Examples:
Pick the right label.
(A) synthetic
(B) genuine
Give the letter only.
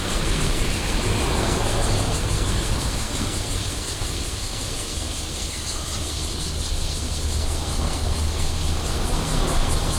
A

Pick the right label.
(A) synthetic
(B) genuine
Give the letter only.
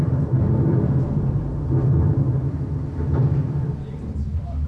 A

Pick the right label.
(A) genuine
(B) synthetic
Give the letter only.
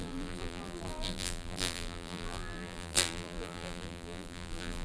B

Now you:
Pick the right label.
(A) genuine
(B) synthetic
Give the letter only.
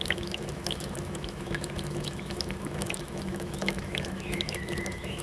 B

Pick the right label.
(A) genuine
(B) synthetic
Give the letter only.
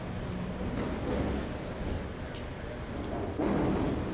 A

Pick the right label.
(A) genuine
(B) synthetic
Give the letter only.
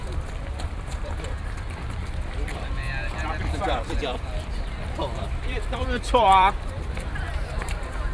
B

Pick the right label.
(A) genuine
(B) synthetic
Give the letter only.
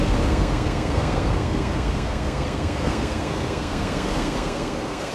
B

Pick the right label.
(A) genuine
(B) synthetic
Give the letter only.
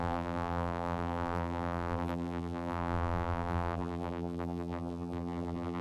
B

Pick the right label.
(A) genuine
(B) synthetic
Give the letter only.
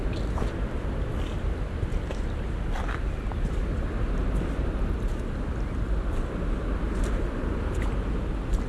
A